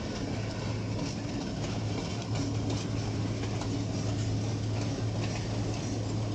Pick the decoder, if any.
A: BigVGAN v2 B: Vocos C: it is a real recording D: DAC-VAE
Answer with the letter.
C